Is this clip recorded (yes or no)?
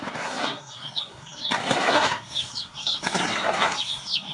no